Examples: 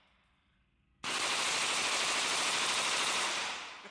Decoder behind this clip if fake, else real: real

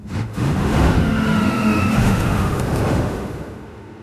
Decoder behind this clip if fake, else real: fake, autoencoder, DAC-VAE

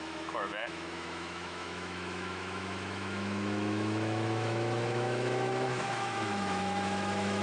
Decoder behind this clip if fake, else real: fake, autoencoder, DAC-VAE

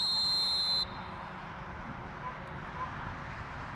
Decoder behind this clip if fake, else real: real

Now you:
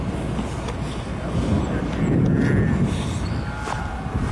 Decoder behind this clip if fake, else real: real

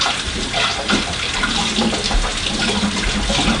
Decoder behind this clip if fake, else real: real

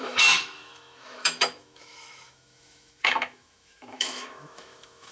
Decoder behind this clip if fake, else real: fake, autoencoder, DAC-VAE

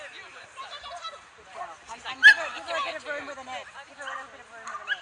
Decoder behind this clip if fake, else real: real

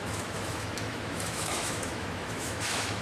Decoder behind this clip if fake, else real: fake, autoencoder, DAC-VAE